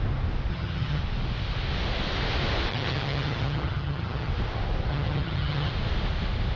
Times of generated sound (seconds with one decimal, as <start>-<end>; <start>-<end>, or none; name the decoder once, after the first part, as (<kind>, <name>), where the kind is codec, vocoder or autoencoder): 0.5-1.0 (vocoder, HiFi-GAN); 2.7-4.3; 4.9-5.7